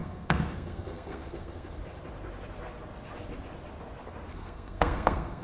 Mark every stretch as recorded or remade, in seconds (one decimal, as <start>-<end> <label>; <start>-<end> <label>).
0.0-1.8 remade; 1.8-4.3 recorded; 4.3-5.4 remade